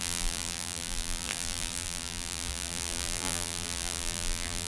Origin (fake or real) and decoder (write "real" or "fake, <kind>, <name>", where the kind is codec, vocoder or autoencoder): fake, vocoder, BigVGAN v2